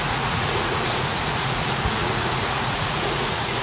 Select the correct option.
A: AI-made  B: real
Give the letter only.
A